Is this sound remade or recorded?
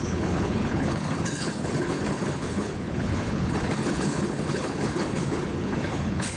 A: remade